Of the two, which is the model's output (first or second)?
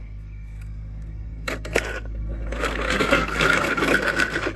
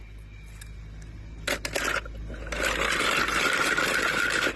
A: first